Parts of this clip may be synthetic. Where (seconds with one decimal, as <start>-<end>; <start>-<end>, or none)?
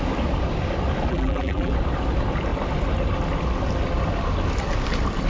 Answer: 1.1-1.7